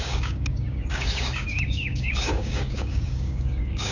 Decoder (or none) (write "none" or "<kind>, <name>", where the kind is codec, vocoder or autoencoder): codec, DAC